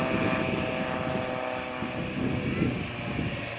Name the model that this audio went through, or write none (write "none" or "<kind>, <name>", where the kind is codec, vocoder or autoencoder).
none